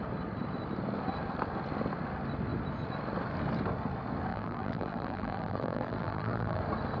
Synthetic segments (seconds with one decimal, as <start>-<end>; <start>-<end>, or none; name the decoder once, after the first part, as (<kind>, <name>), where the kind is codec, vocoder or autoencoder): 4.3-6.6 (vocoder, BigVGAN v2)